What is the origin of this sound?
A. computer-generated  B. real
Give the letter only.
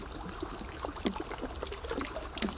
B